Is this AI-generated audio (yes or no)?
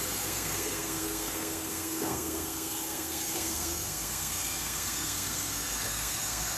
yes